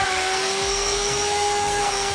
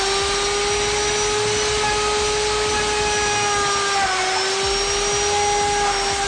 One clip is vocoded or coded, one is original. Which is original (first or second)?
second